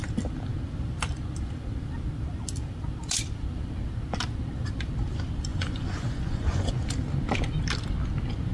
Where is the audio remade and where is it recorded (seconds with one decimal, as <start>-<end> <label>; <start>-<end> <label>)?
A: 0.0-5.5 recorded; 5.5-6.7 remade; 6.7-8.5 recorded